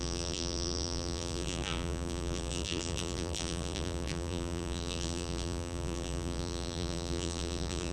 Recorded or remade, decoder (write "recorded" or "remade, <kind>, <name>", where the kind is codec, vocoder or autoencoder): remade, vocoder, BigVGAN v2